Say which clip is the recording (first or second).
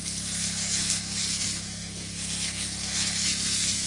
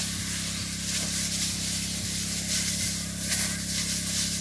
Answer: second